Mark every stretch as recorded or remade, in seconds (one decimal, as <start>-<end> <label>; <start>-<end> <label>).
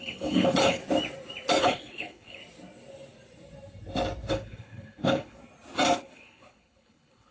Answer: 0.0-0.8 remade; 0.8-1.6 recorded; 1.6-2.4 remade; 2.4-4.3 recorded; 4.3-5.4 remade; 5.4-6.0 recorded; 6.0-7.3 remade